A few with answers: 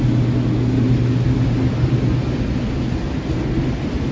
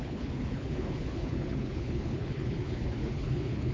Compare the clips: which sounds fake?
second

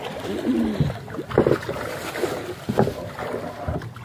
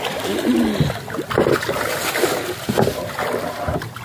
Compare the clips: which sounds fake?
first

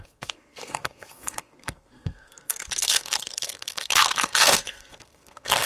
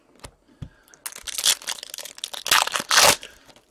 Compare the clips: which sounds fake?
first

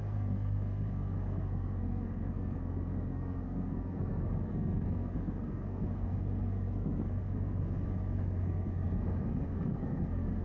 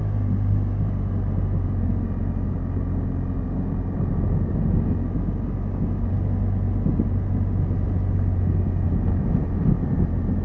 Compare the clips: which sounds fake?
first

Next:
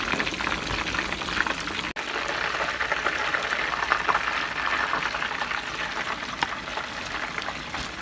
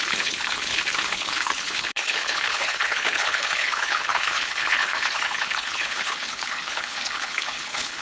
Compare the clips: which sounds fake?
second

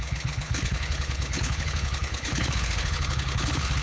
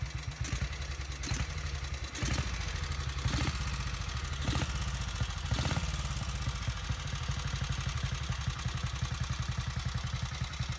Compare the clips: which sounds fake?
first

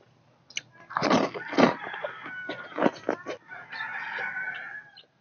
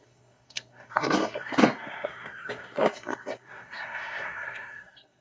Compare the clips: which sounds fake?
second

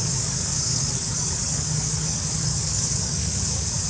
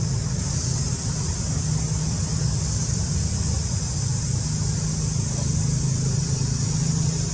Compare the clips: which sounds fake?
first